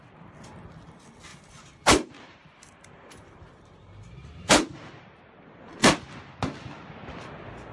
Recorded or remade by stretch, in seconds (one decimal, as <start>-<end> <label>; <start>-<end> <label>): 0.0-1.3 recorded; 1.3-5.2 remade; 5.2-7.7 recorded